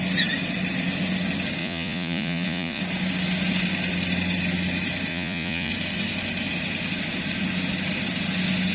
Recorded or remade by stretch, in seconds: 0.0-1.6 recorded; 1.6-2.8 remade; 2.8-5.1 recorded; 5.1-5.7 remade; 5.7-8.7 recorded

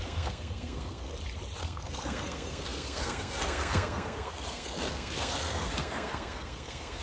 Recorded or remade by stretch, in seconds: 0.0-1.1 remade; 1.1-1.6 recorded; 1.6-7.0 remade